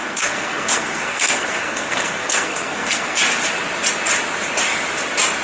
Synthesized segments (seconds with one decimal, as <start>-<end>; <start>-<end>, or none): 0.0-3.2

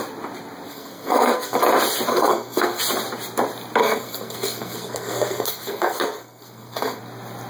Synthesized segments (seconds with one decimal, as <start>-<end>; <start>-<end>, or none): 0.7-1.6; 2.1-2.8; 3.8-7.0